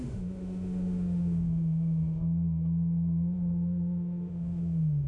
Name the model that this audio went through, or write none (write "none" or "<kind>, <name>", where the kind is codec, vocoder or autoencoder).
autoencoder, DAC-VAE